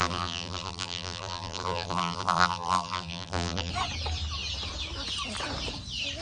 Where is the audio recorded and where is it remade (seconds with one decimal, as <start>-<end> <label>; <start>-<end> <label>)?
0.0-3.7 remade; 3.7-6.2 recorded

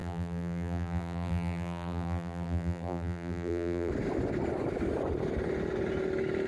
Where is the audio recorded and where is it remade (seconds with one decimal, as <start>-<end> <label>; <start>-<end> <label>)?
0.0-3.9 remade; 3.9-6.5 recorded

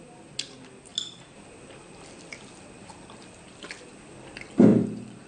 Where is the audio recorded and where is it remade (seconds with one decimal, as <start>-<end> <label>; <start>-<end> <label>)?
0.0-4.7 recorded; 4.7-5.3 remade

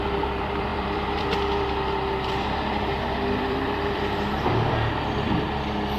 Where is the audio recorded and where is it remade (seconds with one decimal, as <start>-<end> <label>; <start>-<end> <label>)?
0.0-6.0 remade

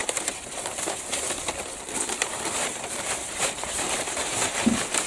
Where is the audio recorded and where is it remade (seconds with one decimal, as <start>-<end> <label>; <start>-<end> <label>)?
0.0-2.2 recorded; 2.2-4.2 remade; 4.2-5.1 recorded

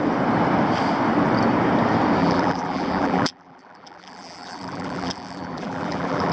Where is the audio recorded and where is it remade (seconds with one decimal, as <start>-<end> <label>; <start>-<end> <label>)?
0.0-2.2 recorded; 2.2-6.3 remade

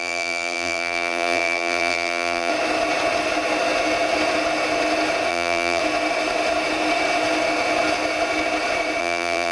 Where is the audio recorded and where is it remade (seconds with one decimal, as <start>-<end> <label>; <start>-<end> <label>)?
0.0-2.5 remade; 2.5-5.3 recorded; 5.3-5.8 remade; 5.8-9.0 recorded; 9.0-9.5 remade

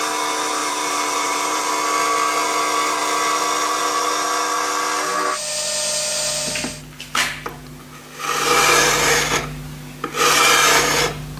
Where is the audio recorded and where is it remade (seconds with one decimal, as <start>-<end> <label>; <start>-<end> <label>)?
0.0-0.6 recorded; 0.6-1.7 remade; 1.7-11.4 recorded